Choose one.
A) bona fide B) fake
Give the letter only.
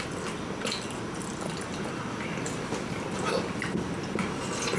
A